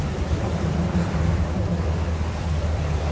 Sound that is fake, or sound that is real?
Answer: fake